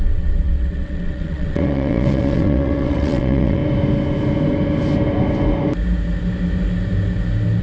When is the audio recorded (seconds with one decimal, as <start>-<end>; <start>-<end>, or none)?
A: 3.6-7.6